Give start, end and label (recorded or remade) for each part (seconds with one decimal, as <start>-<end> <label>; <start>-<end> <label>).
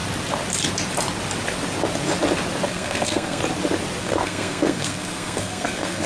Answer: 0.0-2.7 recorded; 2.7-3.4 remade; 3.4-4.0 recorded; 4.0-6.1 remade